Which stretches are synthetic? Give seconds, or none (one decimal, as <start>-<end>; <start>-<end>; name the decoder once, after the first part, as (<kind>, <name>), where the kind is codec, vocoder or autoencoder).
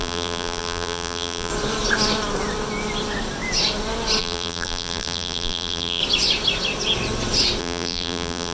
0.0-1.5 (vocoder, BigVGAN v2); 4.2-6.0; 7.6-8.5